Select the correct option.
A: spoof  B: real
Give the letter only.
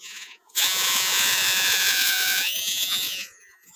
A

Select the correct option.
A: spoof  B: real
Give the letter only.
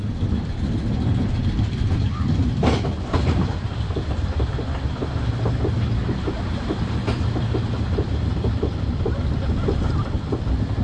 B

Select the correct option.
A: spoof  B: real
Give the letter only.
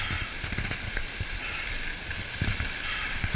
B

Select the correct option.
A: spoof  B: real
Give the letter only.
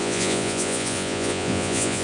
A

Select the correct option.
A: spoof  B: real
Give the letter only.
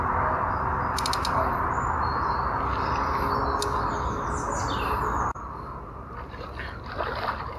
B